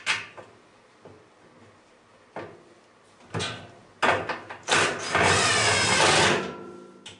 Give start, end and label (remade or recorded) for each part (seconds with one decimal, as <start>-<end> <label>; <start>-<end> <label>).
0.0-7.2 recorded